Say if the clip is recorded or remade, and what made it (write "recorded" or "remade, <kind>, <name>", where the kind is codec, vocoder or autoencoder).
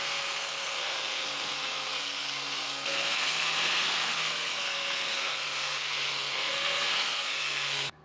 remade, codec, SNAC